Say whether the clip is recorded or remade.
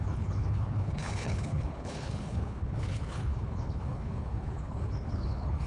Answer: remade